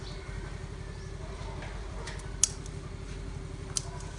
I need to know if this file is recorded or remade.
recorded